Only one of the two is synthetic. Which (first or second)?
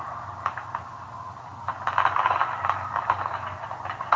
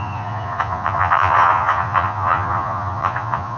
second